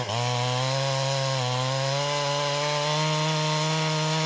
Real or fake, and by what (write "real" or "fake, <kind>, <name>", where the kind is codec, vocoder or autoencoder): real